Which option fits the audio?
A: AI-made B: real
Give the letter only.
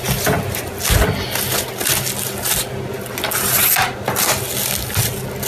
B